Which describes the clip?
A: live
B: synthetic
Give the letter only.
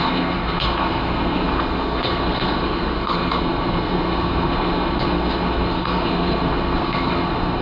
B